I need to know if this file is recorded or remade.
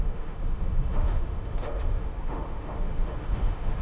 remade